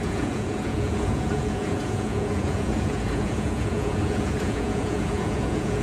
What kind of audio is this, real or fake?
fake